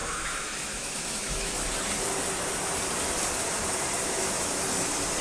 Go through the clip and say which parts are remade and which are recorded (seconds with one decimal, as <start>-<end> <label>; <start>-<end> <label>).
0.0-1.5 remade; 1.5-4.0 recorded; 4.0-4.6 remade; 4.6-5.2 recorded